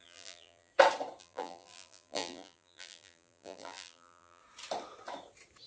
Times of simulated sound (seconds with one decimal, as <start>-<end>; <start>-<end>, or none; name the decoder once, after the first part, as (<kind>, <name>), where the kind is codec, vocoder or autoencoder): 0.0-0.7 (vocoder, BigVGAN v2); 1.2-4.4